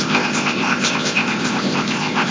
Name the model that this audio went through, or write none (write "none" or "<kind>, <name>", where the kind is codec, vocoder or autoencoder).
codec, ZipCodec